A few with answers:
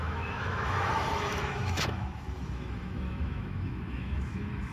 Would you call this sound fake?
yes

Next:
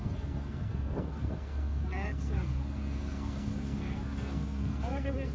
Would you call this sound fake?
yes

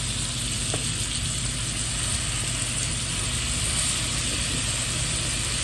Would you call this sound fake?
no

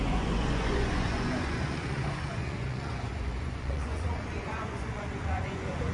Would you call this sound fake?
yes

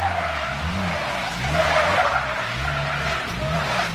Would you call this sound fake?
no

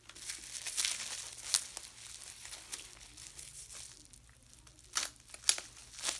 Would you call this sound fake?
no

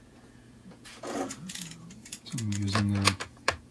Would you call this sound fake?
yes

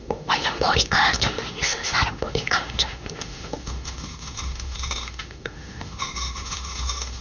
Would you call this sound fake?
yes